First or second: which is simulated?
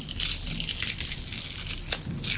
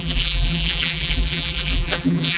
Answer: second